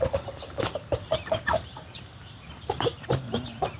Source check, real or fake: real